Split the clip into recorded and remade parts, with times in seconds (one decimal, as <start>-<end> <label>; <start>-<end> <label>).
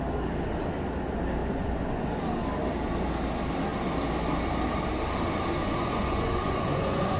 0.0-1.4 recorded; 1.4-2.2 remade; 2.2-5.6 recorded; 5.6-7.2 remade